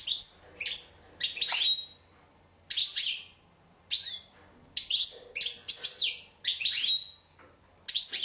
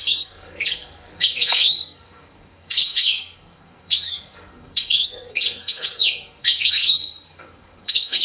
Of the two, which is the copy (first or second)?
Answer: second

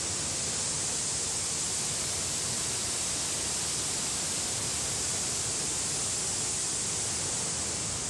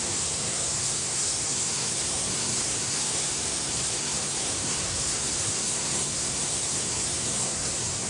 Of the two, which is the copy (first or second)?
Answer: second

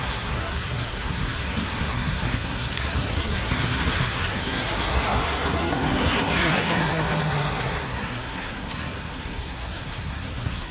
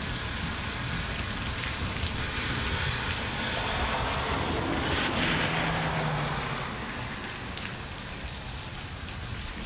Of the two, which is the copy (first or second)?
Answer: first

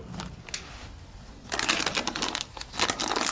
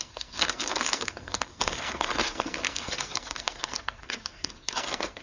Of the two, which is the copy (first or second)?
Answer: second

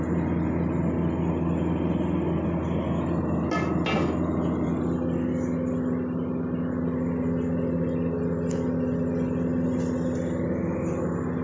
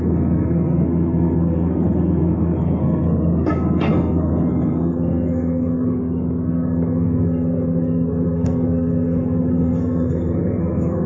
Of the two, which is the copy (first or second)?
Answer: second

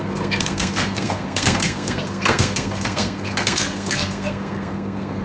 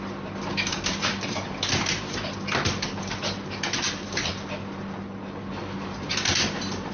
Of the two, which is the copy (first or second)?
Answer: first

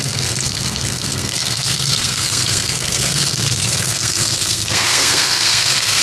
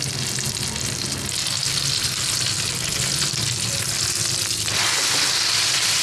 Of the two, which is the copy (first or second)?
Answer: first